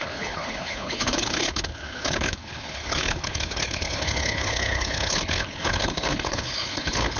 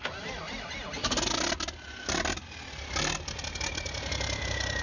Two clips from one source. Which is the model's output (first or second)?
first